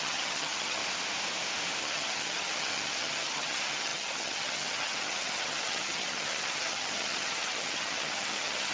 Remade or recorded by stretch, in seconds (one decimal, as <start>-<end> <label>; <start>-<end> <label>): 0.0-0.8 remade; 0.8-1.8 recorded; 1.8-8.7 remade